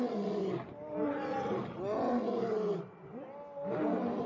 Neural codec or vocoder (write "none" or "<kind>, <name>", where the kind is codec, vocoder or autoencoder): none